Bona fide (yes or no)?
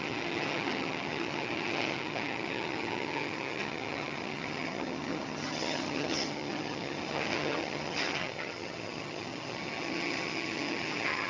no